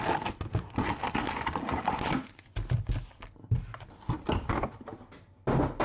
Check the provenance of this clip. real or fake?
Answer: real